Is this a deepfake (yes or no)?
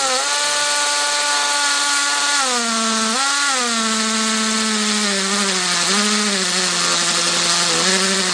no